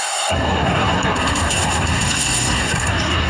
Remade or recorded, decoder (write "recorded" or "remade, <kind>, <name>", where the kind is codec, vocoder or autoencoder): remade, codec, SNAC